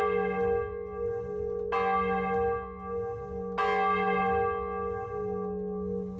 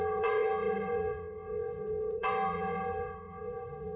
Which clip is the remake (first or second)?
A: second